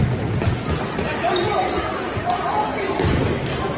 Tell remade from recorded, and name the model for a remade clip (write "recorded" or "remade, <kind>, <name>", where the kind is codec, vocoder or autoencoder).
recorded